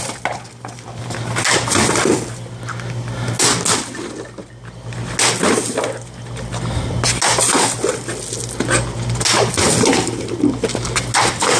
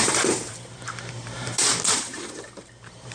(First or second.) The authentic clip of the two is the first